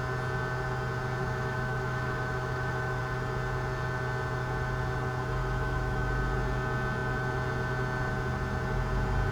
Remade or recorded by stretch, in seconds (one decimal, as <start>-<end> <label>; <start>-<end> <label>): 0.0-1.2 recorded; 1.2-3.0 remade; 3.0-5.4 recorded; 5.4-6.1 remade; 6.1-9.3 recorded